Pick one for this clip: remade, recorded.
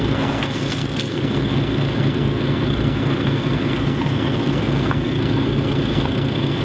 remade